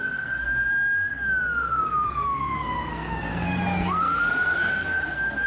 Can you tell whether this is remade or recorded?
remade